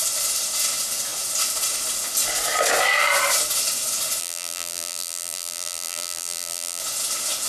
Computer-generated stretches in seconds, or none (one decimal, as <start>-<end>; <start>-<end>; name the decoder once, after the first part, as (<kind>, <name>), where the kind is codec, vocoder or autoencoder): 4.2-6.8 (vocoder, BigVGAN v2)

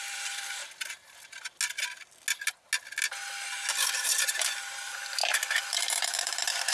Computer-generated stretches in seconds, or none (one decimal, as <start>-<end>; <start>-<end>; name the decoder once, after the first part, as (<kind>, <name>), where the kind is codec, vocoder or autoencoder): 0.0-0.6 (vocoder, BigVGAN v2); 3.8-6.7

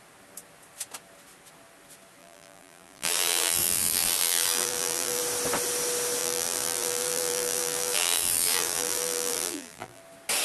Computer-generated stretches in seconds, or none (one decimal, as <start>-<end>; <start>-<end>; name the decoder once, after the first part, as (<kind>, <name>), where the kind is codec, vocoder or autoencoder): 2.2-5.2 (vocoder, BigVGAN v2); 6.2-10.0

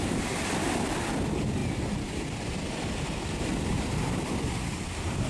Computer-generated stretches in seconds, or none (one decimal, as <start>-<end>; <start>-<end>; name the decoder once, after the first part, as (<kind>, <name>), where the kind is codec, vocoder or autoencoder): 0.0-5.3 (vocoder, BigVGAN v2)

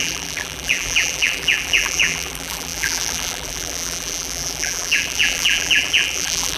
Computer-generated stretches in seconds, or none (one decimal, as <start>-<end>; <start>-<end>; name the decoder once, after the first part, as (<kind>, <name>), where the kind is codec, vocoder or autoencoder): 0.0-6.6 (vocoder, BigVGAN v2)